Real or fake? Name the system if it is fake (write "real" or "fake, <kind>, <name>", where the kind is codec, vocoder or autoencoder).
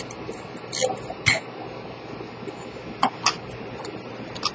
real